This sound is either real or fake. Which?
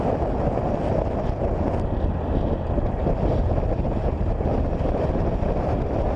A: real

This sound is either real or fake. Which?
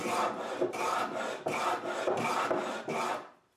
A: fake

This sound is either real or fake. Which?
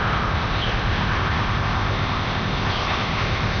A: fake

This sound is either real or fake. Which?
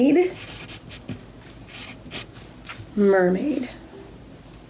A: real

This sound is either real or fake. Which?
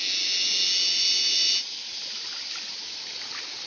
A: real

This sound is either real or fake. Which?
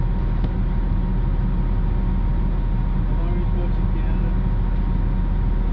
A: real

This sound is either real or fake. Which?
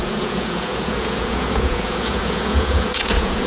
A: fake